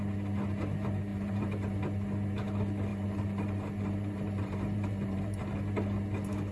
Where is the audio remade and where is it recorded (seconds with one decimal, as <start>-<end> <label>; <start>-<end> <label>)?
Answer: 0.0-1.1 recorded; 1.1-1.8 remade; 1.8-2.9 recorded; 2.9-5.4 remade; 5.4-6.5 recorded